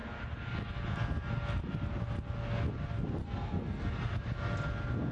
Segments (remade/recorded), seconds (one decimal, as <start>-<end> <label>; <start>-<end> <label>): 0.0-3.2 recorded; 3.2-3.9 remade; 3.9-5.1 recorded